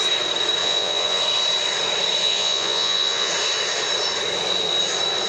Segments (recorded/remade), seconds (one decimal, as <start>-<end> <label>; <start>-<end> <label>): 0.0-0.6 recorded; 0.6-1.2 remade; 1.2-2.2 recorded; 2.2-3.3 remade; 3.3-5.3 recorded